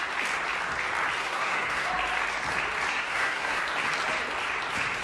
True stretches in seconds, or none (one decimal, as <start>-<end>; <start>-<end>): 0.0-1.2; 1.9-2.9; 3.6-5.0